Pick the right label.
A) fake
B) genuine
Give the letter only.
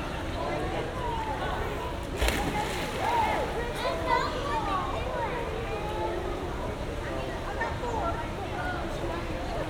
B